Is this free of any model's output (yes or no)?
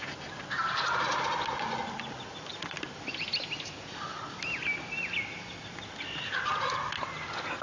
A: yes